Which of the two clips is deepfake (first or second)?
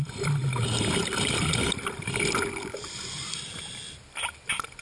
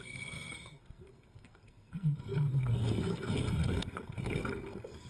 second